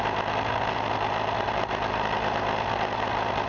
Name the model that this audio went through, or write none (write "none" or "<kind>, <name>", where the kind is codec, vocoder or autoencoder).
none